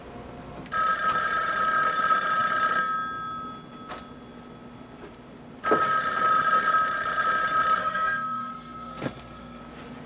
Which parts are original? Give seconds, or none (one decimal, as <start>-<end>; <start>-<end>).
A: 0.0-7.8; 9.6-10.1